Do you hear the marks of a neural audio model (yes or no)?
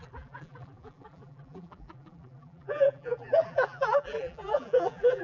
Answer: yes